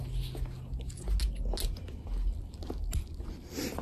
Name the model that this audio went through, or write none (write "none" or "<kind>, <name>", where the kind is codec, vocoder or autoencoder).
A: none